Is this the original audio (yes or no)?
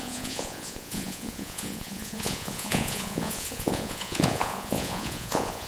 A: no